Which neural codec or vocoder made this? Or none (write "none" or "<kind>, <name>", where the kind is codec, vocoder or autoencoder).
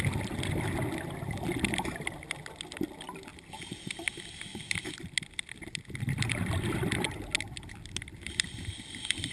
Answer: none